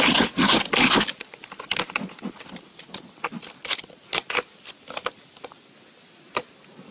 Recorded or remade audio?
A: recorded